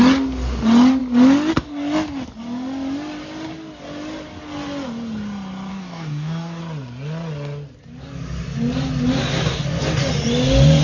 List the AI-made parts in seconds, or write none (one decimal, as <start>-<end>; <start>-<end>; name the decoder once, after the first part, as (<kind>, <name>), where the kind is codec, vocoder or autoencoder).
5.7-6.6 (codec, DAC)